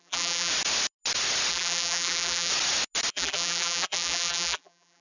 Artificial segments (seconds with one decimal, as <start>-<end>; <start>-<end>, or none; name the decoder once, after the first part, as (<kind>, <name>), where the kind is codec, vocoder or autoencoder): 0.0-0.5 (vocoder, BigVGAN v2); 1.5-2.5; 3.1-5.0